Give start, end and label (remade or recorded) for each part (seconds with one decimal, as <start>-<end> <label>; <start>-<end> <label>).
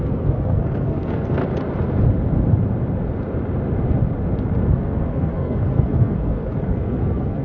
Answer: 0.0-1.4 remade; 1.4-4.7 recorded; 4.7-7.4 remade